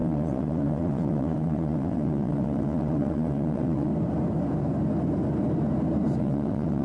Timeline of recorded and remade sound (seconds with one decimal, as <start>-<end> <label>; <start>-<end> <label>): 0.0-3.9 remade; 3.9-6.2 recorded; 6.2-6.8 remade